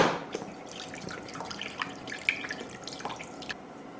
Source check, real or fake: real